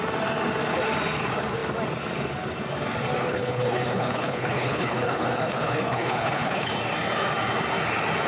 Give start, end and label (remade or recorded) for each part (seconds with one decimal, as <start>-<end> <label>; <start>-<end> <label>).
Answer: 0.0-3.2 recorded; 3.2-6.7 remade; 6.7-8.3 recorded